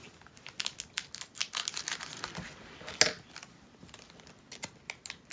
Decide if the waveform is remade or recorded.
recorded